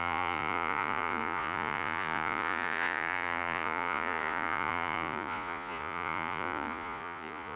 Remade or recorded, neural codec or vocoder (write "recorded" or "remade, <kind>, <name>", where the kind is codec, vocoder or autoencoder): remade, vocoder, Vocos